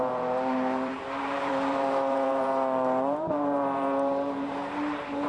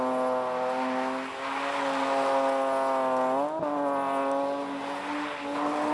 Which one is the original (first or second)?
second